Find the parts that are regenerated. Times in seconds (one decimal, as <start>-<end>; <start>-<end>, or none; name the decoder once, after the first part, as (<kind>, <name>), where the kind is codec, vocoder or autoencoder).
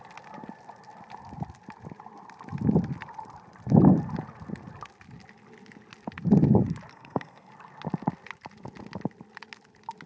6.9-7.5 (codec, SNAC)